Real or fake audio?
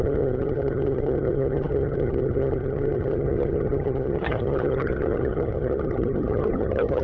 fake